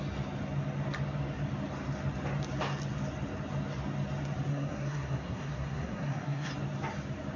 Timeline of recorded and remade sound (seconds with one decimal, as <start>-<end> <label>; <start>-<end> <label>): 0.0-4.5 recorded; 4.5-6.5 remade; 6.5-7.4 recorded